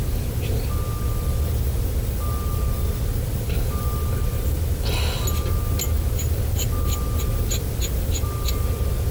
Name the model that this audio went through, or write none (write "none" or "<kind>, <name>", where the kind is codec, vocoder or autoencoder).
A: none